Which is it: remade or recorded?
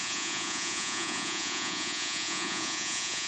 remade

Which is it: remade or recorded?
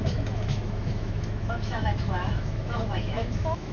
remade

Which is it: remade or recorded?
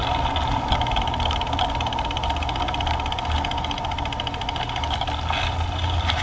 recorded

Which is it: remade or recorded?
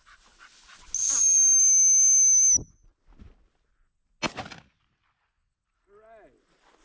recorded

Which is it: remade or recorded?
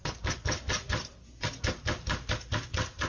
recorded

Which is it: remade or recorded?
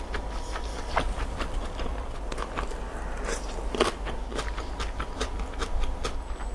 recorded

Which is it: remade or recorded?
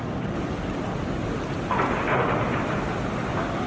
recorded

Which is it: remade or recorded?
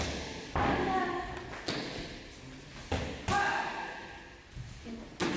recorded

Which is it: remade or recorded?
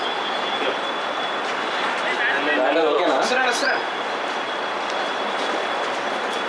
recorded